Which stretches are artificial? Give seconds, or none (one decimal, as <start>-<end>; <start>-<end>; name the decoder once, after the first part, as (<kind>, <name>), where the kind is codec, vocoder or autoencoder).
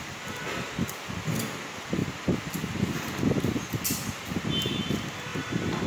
none